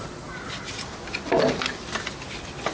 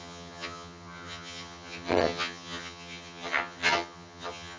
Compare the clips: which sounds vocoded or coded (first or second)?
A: second